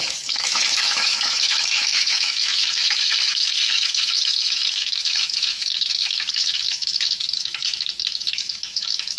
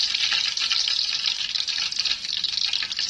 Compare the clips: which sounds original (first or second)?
second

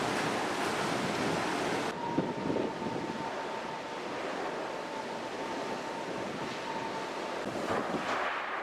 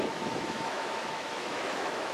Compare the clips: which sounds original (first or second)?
first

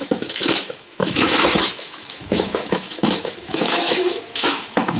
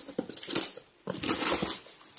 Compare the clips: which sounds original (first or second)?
second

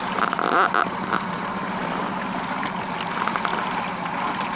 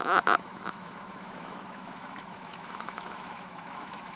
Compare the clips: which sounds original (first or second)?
first